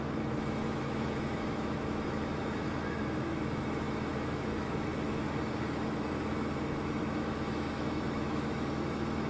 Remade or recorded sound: remade